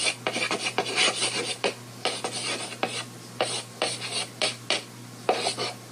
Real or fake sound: real